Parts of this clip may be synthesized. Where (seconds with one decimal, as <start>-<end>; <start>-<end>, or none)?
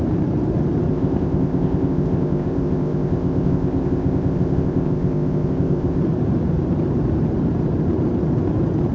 0.9-6.0